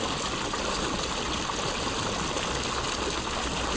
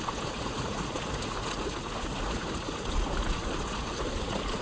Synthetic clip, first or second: second